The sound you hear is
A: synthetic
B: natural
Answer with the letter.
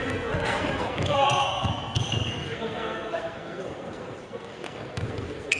A